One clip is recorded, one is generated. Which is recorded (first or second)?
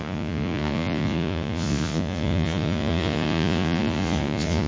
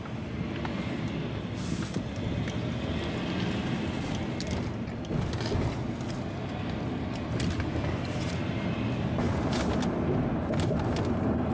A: second